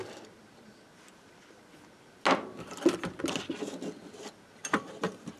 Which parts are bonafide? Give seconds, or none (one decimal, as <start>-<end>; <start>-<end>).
0.0-4.6